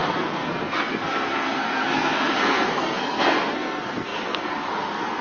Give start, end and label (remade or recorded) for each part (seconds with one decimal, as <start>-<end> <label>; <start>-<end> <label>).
0.0-5.2 remade